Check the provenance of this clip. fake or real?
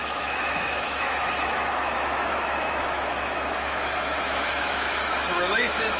fake